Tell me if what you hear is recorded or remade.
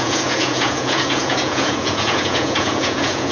remade